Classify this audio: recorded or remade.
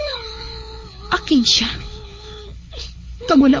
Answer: remade